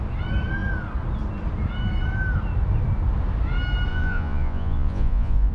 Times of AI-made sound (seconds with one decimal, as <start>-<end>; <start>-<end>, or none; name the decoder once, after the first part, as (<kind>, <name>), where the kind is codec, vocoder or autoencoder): 3.9-5.5 (vocoder, Vocos)

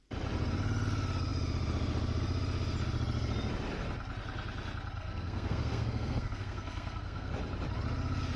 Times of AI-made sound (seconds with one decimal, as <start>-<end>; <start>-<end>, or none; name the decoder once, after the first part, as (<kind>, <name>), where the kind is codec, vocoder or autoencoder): 5.0-7.3 (codec, SNAC)

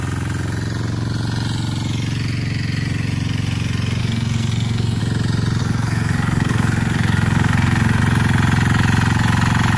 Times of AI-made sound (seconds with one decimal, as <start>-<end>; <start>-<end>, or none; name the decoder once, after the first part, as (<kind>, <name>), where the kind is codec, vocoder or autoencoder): 4.0-5.0 (codec, SNAC); 5.6-8.0

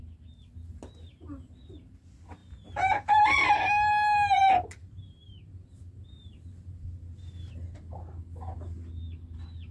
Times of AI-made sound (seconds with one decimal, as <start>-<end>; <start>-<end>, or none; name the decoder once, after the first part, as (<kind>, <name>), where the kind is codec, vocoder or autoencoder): none